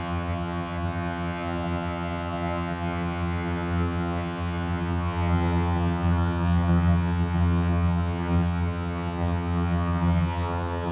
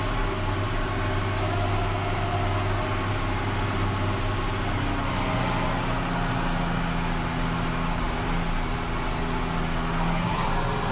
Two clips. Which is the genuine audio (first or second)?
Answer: second